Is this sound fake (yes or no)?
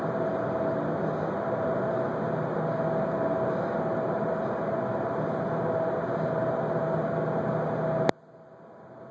no